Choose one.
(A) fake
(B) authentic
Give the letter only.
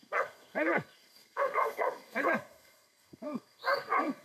A